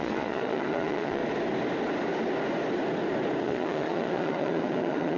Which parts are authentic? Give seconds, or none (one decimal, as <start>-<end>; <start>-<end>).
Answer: 1.2-3.4